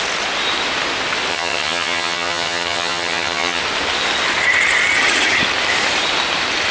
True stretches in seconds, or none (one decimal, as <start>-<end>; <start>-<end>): 0.0-1.3; 3.6-6.7